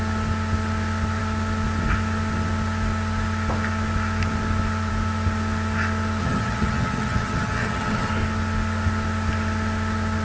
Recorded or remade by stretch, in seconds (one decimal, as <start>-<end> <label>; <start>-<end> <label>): 0.0-6.2 recorded; 6.2-8.1 remade; 8.1-10.2 recorded